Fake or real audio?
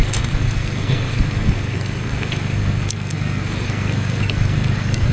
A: fake